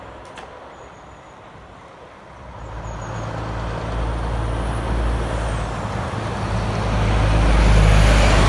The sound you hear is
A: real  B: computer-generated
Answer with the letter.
A